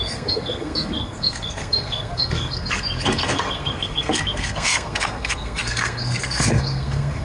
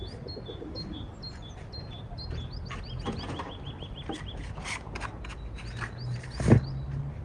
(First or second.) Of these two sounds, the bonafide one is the second